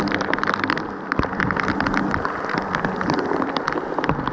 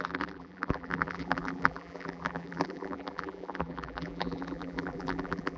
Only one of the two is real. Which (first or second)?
first